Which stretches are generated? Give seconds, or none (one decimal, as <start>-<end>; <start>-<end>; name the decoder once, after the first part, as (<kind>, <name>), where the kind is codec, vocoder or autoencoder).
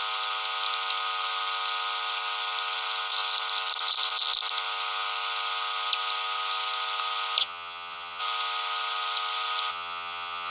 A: 7.4-8.2 (vocoder, HiFi-GAN); 9.7-10.5